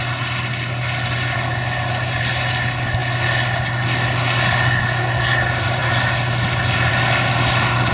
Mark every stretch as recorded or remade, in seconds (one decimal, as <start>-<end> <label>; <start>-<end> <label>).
0.0-7.9 recorded